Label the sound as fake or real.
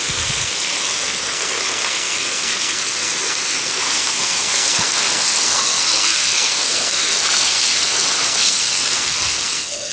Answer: fake